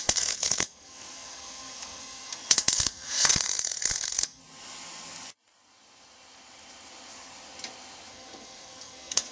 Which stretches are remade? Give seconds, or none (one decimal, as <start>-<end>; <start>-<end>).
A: 0.0-4.4; 8.1-9.3